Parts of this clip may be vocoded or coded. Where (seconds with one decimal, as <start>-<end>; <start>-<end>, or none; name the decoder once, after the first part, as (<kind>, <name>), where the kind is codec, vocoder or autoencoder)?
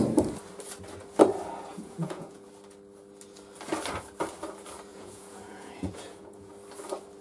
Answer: 1.7-2.5 (vocoder, Vocos); 4.9-6.5